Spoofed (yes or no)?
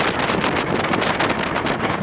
no